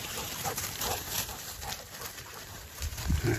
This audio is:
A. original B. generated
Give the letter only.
B